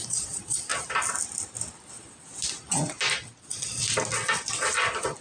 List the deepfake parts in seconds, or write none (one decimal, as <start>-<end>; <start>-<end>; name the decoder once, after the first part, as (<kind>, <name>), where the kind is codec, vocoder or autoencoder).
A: 0.0-0.7 (vocoder, Vocos); 3.4-3.8